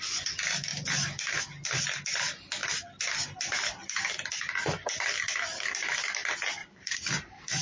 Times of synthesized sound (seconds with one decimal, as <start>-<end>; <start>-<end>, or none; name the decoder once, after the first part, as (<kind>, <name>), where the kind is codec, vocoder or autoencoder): 0.7-1.4 (vocoder, BigVGAN v2); 6.6-7.6